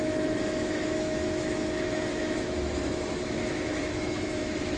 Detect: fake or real fake